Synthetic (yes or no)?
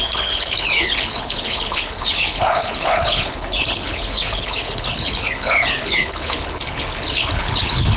yes